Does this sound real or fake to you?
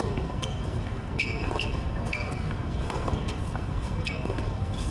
fake